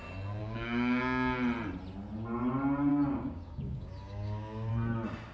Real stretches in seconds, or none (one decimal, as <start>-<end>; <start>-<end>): 0.0-0.4; 1.0-2.9; 4.7-5.3